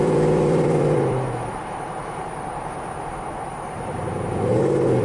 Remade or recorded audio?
remade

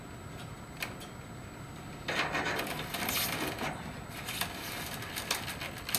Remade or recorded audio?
recorded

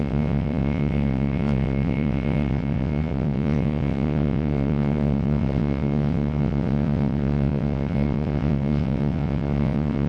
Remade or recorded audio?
remade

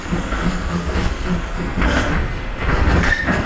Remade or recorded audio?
remade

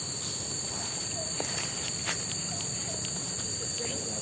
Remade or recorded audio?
recorded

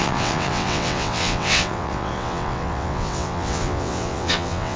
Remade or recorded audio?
remade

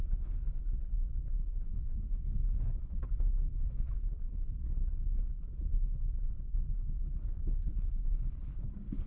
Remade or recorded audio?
remade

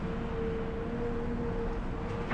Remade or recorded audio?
recorded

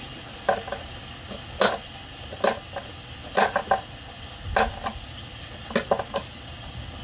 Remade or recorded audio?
recorded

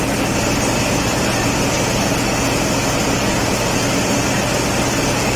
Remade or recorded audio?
recorded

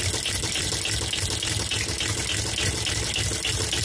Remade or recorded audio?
recorded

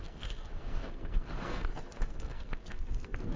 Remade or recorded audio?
remade